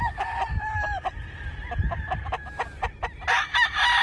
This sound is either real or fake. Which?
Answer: real